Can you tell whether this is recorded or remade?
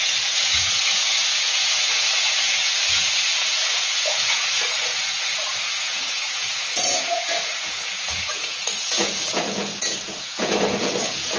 remade